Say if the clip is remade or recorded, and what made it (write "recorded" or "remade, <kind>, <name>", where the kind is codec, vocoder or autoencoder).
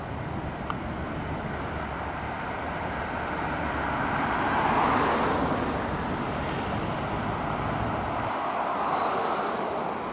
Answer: recorded